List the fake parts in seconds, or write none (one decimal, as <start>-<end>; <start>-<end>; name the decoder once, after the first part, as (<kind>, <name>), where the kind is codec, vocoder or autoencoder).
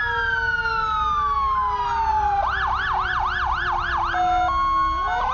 2.1-3.9 (vocoder, BigVGAN v2)